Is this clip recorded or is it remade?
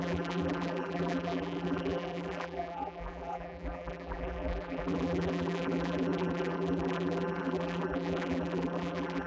remade